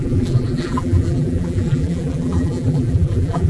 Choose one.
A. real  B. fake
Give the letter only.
B